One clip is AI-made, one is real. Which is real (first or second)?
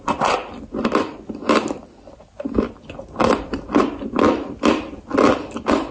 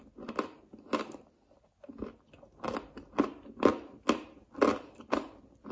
second